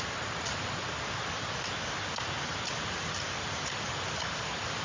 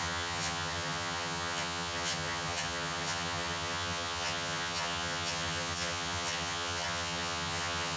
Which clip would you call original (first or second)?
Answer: first